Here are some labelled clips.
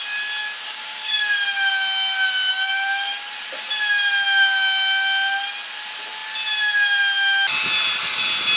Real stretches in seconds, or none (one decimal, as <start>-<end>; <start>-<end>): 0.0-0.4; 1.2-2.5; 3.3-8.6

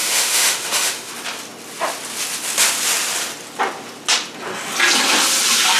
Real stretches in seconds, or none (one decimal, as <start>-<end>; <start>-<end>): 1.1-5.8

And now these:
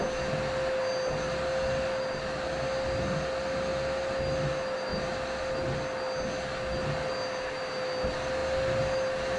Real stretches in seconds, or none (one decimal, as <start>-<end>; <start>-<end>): 0.0-9.4

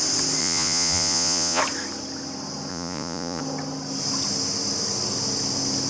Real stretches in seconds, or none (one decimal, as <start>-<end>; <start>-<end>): 0.0-0.4; 1.6-2.7; 3.4-5.9

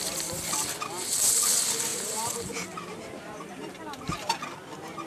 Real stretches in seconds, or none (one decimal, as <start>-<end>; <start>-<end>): 0.0-0.9; 1.5-1.9

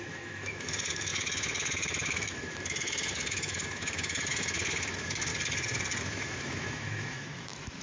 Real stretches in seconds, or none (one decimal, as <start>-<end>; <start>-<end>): 5.3-6.0